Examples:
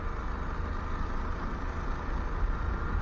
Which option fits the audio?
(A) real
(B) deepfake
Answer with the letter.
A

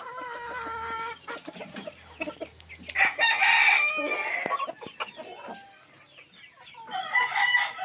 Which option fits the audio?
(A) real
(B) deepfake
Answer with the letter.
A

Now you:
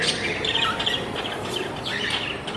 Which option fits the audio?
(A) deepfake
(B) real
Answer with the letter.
B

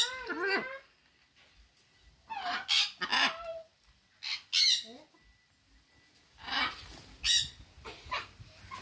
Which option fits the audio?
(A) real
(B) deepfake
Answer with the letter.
A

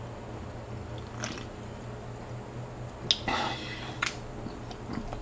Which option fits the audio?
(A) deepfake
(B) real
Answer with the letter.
B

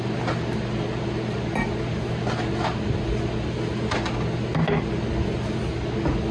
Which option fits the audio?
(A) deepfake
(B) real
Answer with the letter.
B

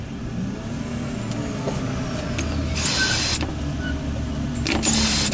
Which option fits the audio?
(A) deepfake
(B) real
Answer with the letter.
B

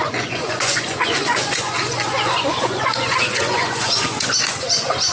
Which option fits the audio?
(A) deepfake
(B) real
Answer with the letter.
A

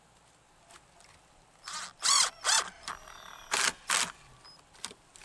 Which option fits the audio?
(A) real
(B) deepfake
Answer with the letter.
A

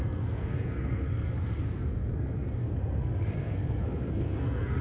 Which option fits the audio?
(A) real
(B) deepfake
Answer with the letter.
B